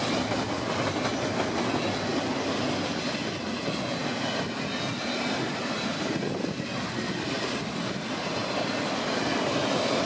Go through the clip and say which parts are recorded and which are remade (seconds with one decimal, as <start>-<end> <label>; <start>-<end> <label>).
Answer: 0.0-2.1 recorded; 2.1-3.5 remade; 3.5-8.4 recorded; 8.4-9.1 remade; 9.1-10.1 recorded

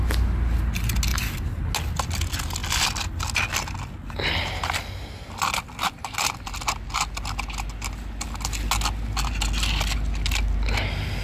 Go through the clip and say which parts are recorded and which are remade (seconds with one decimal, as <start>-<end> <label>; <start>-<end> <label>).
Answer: 0.0-1.1 recorded; 1.1-1.6 remade; 1.6-11.2 recorded

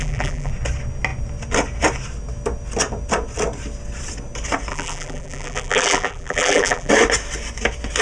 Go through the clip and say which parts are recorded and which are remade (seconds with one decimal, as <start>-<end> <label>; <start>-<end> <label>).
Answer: 0.0-0.5 remade; 0.5-4.7 recorded; 4.7-6.9 remade; 6.9-8.0 recorded

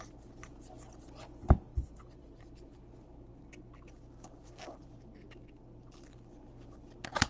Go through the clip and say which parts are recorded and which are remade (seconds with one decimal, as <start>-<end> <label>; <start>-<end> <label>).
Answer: 0.0-1.7 recorded; 1.7-2.9 remade; 2.9-7.3 recorded

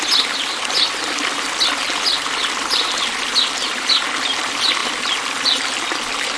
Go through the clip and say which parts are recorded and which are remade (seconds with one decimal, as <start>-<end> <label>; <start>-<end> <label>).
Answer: 0.0-6.4 recorded

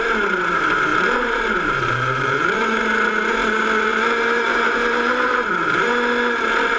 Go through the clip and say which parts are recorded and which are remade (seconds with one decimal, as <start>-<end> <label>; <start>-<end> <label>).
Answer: 0.0-0.9 recorded; 0.9-2.8 remade; 2.8-3.9 recorded; 3.9-5.9 remade; 5.9-6.8 recorded

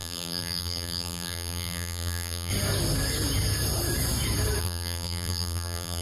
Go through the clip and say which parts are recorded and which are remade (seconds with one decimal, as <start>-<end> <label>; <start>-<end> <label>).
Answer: 0.0-2.5 remade; 2.5-4.6 recorded; 4.6-6.0 remade